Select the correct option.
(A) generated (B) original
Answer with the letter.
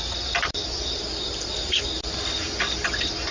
B